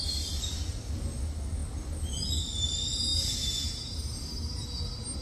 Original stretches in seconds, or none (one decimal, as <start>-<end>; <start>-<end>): 0.0-3.1; 4.7-5.2